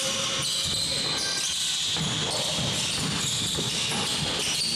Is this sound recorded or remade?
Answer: recorded